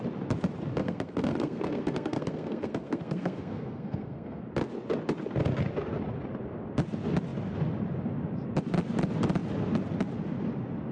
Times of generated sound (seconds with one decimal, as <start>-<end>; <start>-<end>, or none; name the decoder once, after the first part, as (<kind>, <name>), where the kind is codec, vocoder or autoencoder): 0.8-4.4 (codec, SNAC)